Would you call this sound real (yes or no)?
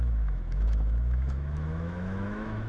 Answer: no